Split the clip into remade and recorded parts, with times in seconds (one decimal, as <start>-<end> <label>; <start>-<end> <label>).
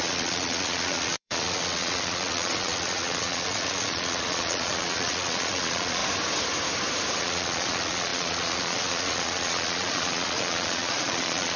0.0-6.0 remade; 6.0-7.2 recorded; 7.2-11.6 remade